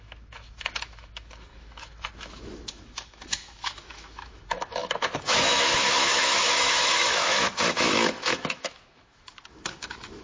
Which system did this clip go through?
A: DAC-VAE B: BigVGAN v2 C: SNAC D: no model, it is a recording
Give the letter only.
A